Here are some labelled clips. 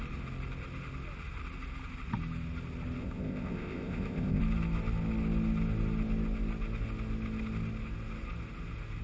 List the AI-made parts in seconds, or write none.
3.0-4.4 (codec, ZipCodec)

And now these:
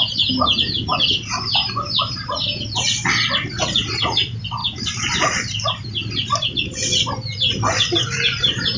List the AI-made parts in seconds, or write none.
none

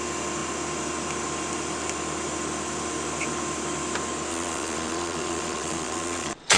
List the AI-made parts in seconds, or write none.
4.3-6.6 (vocoder, Vocos)

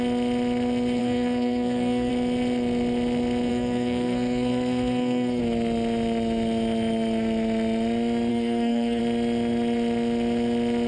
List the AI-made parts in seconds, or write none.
1.0-2.1 (codec, SNAC); 3.5-5.4; 8.3-9.0

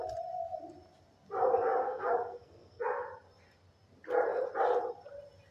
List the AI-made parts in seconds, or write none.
1.8-2.8 (codec, SNAC)